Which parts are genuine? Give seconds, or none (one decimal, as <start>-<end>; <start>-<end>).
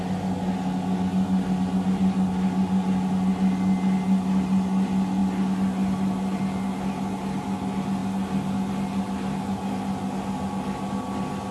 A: 0.0-11.5